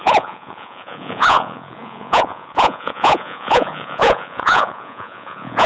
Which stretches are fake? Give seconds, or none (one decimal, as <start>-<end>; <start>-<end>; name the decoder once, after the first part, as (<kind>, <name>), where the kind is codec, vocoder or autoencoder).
0.0-5.7 (vocoder, Vocos)